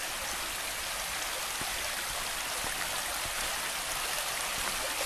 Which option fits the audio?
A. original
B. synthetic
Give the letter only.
A